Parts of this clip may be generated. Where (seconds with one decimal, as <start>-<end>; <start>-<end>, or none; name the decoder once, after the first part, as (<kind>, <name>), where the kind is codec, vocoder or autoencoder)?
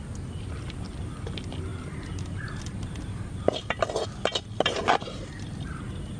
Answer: none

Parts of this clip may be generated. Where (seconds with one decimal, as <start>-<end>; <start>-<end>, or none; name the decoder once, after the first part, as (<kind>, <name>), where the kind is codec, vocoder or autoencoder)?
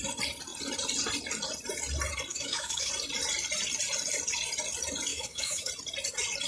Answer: 2.3-2.9 (autoencoder, DAC-VAE); 5.1-5.7